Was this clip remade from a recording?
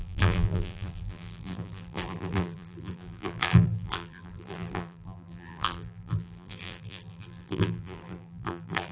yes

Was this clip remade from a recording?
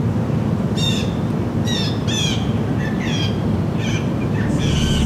no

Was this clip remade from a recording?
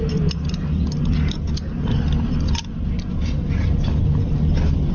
no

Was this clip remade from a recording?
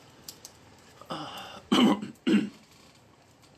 yes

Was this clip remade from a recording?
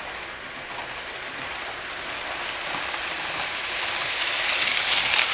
no